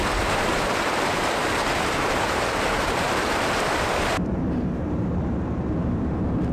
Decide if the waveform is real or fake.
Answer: fake